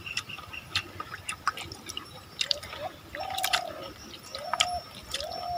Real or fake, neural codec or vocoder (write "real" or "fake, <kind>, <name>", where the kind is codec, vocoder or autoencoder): fake, vocoder, BigVGAN v2